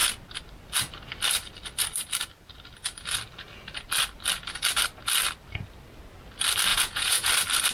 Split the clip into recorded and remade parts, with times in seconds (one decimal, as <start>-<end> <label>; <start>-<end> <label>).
0.0-6.7 recorded; 6.7-7.3 remade; 7.3-7.7 recorded